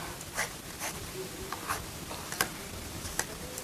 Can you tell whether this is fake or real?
real